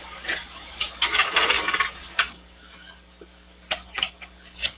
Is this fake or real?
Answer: fake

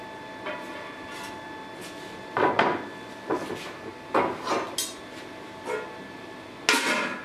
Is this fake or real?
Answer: real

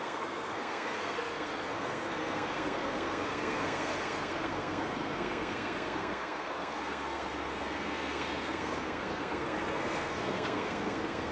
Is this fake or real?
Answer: fake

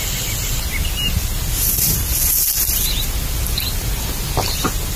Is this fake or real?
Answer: real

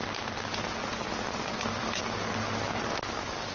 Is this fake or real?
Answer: real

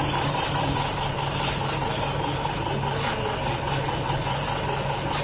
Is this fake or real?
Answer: real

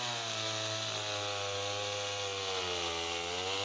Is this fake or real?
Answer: real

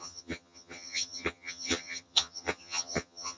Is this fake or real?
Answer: fake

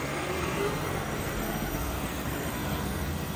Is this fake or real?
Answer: fake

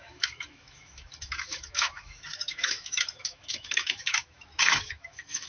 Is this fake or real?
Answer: fake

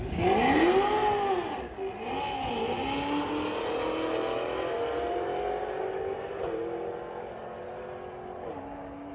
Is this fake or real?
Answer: real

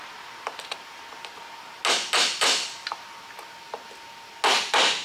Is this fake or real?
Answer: real